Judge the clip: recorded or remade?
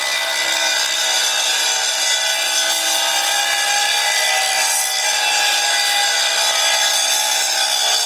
recorded